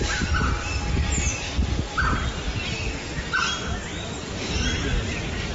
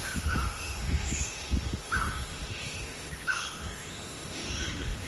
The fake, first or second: second